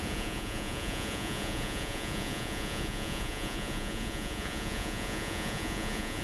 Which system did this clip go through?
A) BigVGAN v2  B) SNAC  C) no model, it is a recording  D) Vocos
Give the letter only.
D